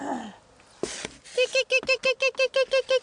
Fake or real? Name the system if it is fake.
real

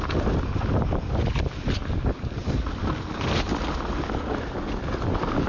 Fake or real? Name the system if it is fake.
real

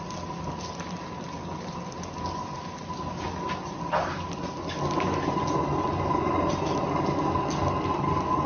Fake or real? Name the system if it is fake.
real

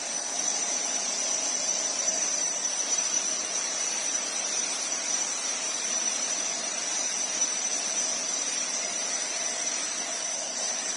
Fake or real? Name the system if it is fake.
fake, vocoder, BigVGAN v2